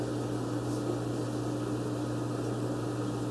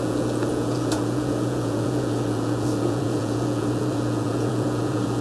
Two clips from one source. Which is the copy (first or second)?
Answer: second